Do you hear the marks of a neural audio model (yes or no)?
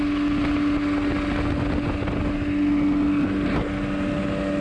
no